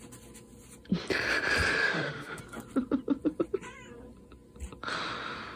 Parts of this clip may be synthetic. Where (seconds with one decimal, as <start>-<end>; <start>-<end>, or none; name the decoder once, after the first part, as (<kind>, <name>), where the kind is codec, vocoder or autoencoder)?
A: 1.8-2.4 (autoencoder, DAC-VAE)